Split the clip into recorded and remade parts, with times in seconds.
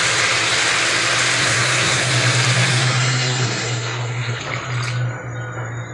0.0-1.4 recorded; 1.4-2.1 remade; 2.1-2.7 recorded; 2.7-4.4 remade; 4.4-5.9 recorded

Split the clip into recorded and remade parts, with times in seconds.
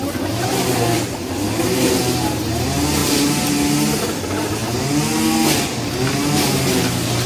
0.0-7.3 recorded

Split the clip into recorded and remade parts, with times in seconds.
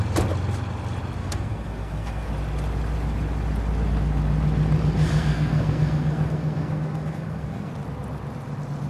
0.0-1.2 recorded; 1.2-2.3 remade; 2.3-5.0 recorded; 5.0-7.7 remade; 7.7-8.9 recorded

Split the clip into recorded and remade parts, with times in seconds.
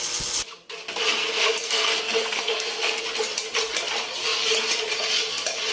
0.0-1.2 recorded; 1.2-3.0 remade; 3.0-5.7 recorded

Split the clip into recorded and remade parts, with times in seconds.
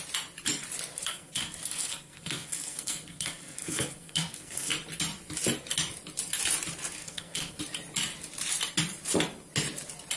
0.0-0.9 recorded; 0.9-4.7 remade; 4.7-7.0 recorded; 7.0-7.6 remade; 7.6-10.2 recorded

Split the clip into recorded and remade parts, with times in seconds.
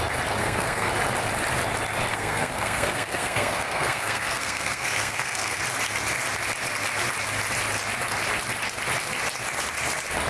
0.0-0.4 recorded; 0.4-0.9 remade; 0.9-2.1 recorded; 2.1-5.6 remade; 5.6-10.3 recorded